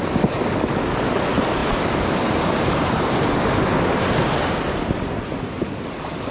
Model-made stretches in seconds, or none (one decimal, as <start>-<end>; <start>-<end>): none